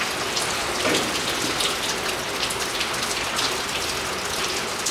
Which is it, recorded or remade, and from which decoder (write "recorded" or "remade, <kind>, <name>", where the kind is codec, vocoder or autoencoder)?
recorded